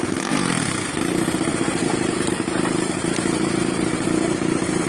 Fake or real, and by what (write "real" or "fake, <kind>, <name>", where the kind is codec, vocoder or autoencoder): fake, vocoder, BigVGAN v2